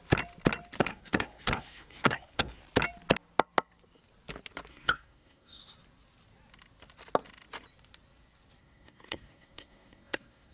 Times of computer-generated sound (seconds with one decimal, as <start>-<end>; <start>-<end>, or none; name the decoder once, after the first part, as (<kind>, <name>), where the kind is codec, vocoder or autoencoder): 0.8-2.6 (codec, SNAC); 4.7-5.6; 8.6-10.5